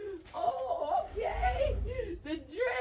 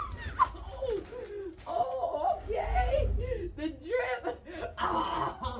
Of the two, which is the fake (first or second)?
first